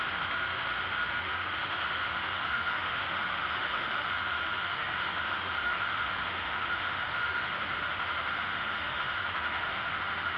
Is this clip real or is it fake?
fake